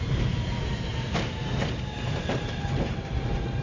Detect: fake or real fake